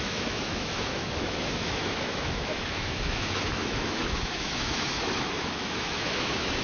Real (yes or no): no